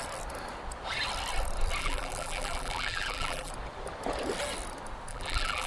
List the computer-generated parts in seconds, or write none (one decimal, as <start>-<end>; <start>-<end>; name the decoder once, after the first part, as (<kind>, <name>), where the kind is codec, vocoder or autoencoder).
1.8-3.5 (vocoder, BigVGAN v2); 5.1-5.7